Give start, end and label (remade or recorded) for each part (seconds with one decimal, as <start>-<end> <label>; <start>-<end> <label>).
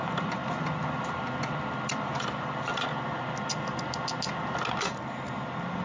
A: 0.0-0.4 remade; 0.4-2.0 recorded; 2.0-2.7 remade; 2.7-5.8 recorded